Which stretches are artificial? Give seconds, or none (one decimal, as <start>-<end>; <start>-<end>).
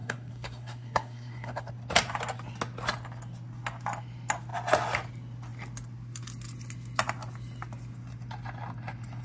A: 0.0-1.7